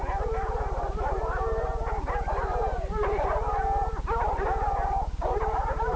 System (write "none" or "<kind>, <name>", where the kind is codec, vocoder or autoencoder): none